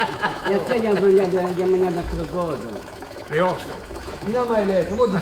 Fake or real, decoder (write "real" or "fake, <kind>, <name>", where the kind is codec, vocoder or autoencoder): fake, autoencoder, DAC-VAE